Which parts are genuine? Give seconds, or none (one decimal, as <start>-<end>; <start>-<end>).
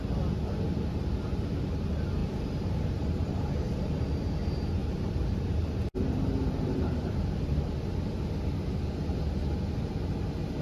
0.0-2.2; 4.1-4.8; 7.6-10.6